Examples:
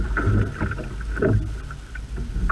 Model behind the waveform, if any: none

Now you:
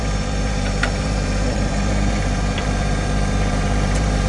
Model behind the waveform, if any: vocoder, BigVGAN v2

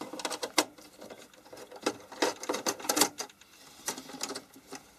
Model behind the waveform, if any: none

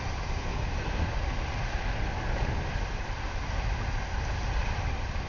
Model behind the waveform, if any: none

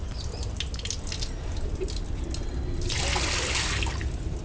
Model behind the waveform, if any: none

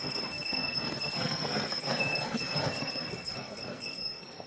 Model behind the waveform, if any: codec, SNAC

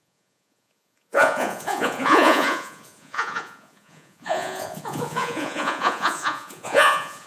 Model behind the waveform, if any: vocoder, Vocos